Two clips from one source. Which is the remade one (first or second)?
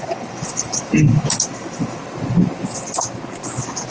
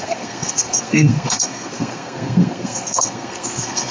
second